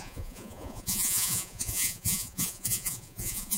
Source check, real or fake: fake